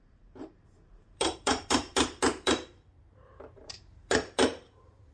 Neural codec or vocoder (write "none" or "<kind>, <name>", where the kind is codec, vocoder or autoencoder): vocoder, BigVGAN v2